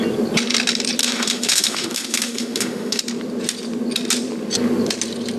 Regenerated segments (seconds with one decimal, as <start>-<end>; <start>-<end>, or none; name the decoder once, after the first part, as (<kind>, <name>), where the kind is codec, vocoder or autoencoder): 1.0-3.0 (autoencoder, DAC-VAE)